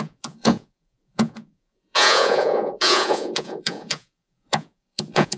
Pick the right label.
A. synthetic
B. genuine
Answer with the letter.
A